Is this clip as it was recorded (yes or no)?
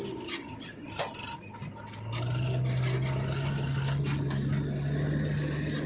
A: yes